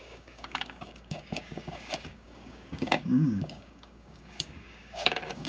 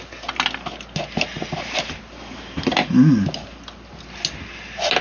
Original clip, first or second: second